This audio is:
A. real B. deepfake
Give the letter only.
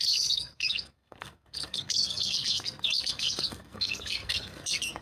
B